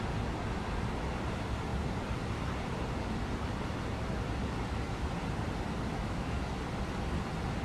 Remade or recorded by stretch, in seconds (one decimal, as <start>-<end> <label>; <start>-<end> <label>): 0.0-5.9 recorded; 5.9-6.5 remade; 6.5-7.6 recorded